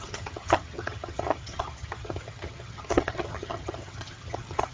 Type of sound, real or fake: fake